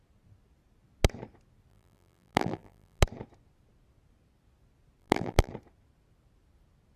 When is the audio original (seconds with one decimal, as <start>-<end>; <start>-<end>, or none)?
0.0-1.7; 3.0-5.0; 5.5-7.0